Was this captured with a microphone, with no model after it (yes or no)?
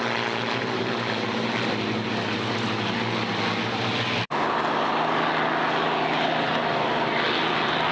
yes